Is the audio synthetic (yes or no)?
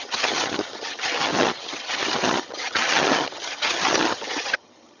yes